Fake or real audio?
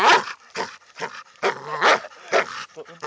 real